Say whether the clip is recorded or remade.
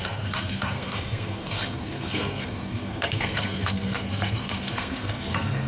remade